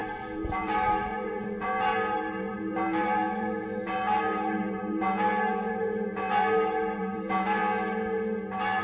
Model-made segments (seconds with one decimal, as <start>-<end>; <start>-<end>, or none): 0.0-7.6

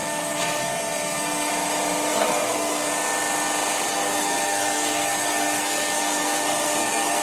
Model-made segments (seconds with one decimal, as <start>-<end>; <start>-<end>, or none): 0.0-1.5; 2.1-2.9; 3.9-7.2

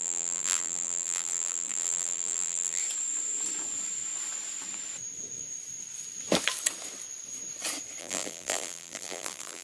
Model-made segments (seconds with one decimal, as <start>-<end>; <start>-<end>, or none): 0.0-2.8; 8.0-9.6

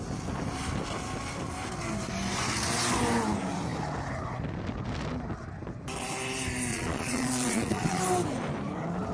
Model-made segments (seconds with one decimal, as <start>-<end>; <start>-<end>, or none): 6.7-8.0

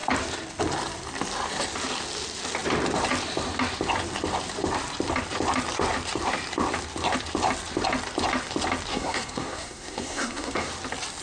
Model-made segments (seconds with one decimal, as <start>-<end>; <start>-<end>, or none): 8.9-10.7

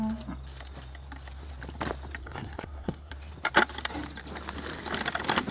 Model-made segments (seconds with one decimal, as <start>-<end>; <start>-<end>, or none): 2.2-3.1

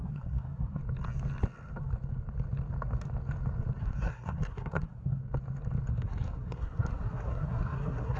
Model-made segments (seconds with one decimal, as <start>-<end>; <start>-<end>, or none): 0.0-0.8; 3.8-5.2; 5.9-8.2

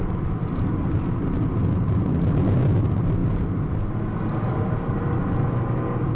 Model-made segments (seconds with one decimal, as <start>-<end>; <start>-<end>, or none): none